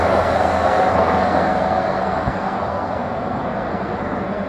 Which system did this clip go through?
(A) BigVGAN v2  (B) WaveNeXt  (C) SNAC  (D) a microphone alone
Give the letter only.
C